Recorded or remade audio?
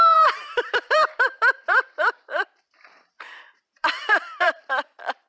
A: remade